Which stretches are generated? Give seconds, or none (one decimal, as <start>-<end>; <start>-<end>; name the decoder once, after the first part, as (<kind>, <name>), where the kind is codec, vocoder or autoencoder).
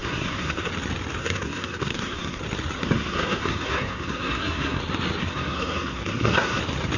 0.0-0.7 (codec, SNAC); 1.2-2.4; 2.8-4.8; 5.2-6.6